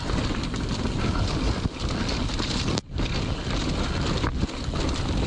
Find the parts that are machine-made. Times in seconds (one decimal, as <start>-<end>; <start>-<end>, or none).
none